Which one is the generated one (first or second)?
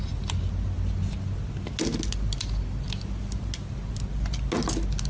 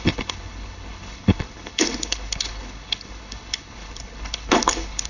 second